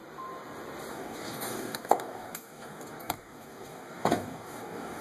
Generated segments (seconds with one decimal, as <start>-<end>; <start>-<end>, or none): 0.9-5.0